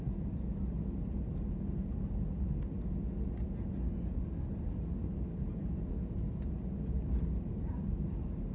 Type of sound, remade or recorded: recorded